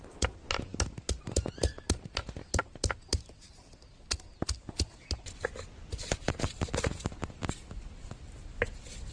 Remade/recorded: recorded